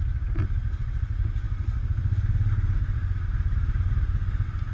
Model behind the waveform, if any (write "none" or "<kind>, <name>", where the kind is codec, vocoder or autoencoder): none